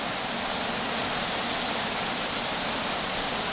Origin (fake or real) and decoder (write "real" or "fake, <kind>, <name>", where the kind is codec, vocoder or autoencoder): real